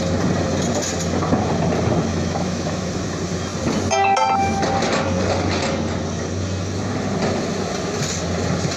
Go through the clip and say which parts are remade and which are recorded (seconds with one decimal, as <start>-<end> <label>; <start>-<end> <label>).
0.0-2.1 recorded; 2.1-2.9 remade; 2.9-8.8 recorded